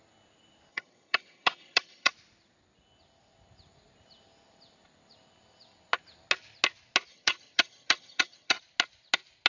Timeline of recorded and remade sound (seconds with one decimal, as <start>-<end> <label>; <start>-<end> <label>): 0.0-0.7 recorded; 0.7-2.1 remade; 2.1-7.1 recorded; 7.1-8.6 remade; 8.6-9.5 recorded